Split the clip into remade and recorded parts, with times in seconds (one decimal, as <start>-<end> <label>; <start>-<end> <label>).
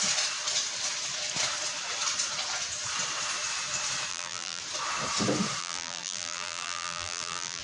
0.0-4.1 recorded; 4.1-4.6 remade; 4.6-5.6 recorded; 5.6-7.6 remade